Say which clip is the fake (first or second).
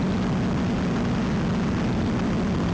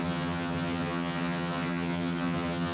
second